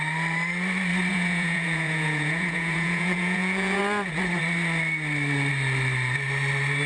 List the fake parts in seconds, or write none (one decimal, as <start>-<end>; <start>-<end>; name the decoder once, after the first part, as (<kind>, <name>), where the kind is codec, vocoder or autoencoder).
1.1-3.8 (vocoder, Vocos)